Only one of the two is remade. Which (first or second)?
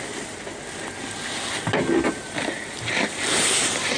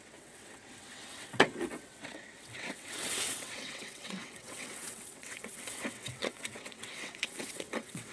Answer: second